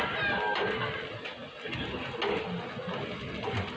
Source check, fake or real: real